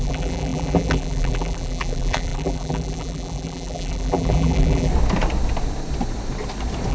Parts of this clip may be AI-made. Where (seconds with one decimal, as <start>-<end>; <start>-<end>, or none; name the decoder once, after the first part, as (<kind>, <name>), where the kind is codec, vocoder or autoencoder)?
0.0-4.9 (vocoder, BigVGAN v2)